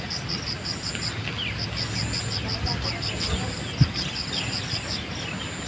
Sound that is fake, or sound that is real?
real